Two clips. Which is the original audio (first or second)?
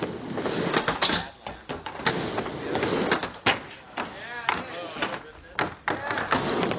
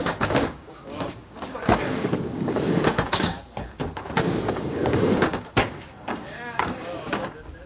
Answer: first